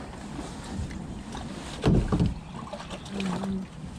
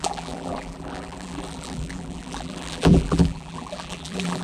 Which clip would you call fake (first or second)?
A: second